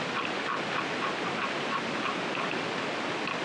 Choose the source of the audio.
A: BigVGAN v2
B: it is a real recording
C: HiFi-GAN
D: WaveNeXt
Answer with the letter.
B